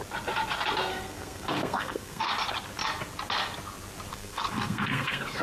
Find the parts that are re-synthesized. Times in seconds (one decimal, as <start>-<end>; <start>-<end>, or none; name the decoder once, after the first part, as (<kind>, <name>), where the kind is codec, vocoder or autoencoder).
0.9-2.3 (codec, SNAC); 4.1-5.4